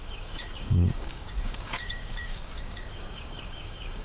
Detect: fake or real fake